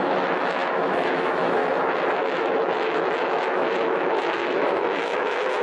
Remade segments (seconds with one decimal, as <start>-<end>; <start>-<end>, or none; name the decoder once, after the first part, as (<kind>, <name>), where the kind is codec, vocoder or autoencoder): 0.0-1.6 (autoencoder, DAC-VAE); 2.2-5.6